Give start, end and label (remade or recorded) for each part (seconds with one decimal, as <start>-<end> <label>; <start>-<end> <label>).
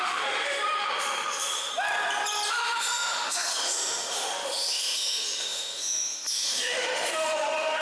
0.0-1.7 remade; 1.7-2.5 recorded; 2.5-7.8 remade